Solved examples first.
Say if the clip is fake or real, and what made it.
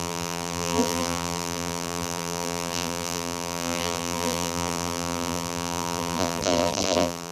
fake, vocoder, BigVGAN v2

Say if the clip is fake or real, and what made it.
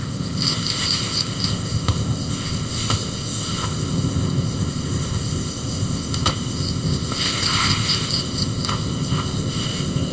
fake, codec, ZipCodec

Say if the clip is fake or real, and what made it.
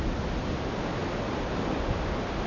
real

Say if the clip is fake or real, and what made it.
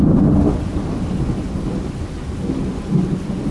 real